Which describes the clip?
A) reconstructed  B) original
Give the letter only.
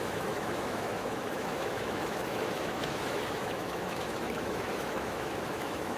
A